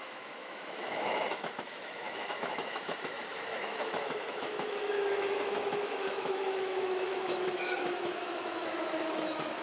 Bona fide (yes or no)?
no